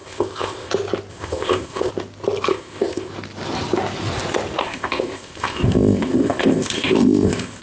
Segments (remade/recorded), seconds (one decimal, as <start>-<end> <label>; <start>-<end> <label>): 0.0-0.7 remade; 0.7-1.1 recorded; 1.1-1.9 remade; 1.9-2.5 recorded; 2.5-3.1 remade; 3.1-4.6 recorded; 4.6-7.6 remade